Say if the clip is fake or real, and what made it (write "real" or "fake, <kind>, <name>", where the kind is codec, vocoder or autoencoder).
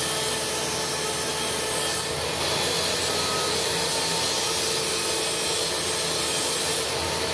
real